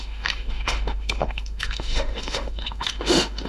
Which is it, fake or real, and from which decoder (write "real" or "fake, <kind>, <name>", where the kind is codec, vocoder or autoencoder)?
fake, autoencoder, DAC-VAE